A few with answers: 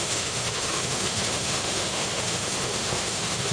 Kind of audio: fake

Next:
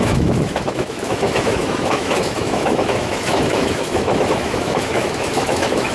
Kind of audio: fake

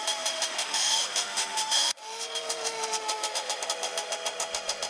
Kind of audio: fake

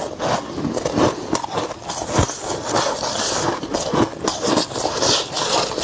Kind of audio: real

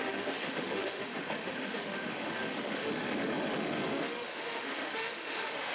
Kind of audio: fake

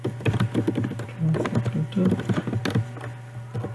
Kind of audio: real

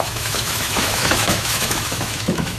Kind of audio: fake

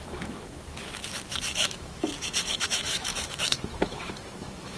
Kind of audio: fake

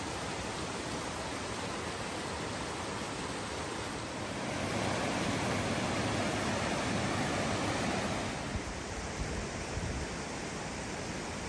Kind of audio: real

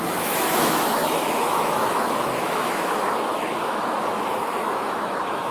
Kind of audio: fake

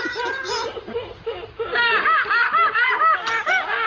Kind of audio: real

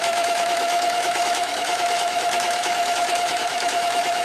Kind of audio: fake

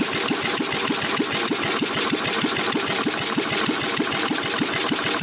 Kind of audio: real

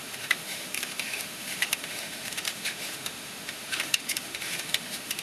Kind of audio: fake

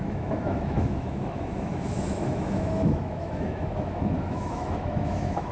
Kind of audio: fake